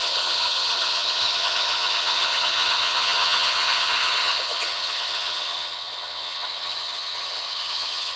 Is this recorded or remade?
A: remade